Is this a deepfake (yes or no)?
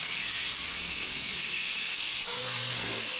yes